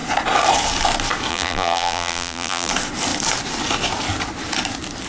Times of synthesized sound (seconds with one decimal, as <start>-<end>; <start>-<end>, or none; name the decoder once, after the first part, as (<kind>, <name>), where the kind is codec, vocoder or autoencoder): 1.3-2.7 (vocoder, BigVGAN v2)

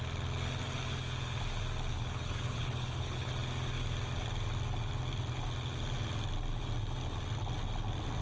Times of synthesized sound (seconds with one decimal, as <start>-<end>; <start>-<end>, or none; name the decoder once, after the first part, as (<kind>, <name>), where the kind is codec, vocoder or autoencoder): 1.9-3.3 (codec, HILCodec)

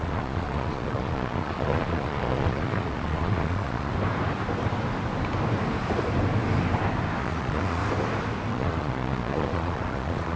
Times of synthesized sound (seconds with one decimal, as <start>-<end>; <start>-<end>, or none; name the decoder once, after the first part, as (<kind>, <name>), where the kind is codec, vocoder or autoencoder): 0.0-3.9 (vocoder, Vocos); 7.2-7.8; 8.5-10.4

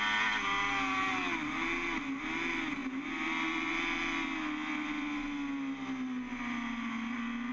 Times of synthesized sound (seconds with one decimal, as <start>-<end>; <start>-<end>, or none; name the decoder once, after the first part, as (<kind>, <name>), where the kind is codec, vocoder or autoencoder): none

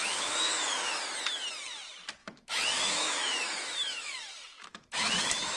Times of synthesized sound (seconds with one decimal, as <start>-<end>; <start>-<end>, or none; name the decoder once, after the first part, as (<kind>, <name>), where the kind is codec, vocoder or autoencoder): 0.0-1.0 (autoencoder, DAC-VAE); 2.2-5.6